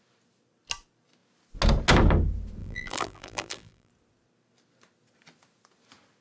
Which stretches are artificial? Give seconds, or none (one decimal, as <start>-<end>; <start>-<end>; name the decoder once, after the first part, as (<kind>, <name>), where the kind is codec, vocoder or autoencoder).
2.6-3.9 (vocoder, BigVGAN v2)